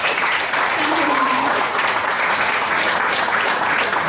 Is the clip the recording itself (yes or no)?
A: no